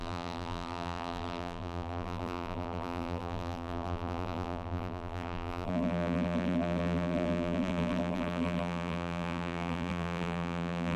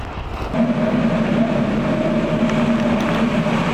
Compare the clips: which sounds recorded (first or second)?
second